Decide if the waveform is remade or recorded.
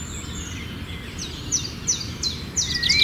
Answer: recorded